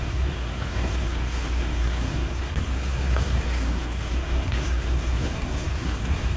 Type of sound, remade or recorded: remade